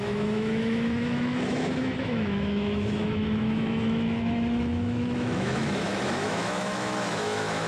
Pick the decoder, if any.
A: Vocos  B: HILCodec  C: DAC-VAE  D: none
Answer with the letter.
C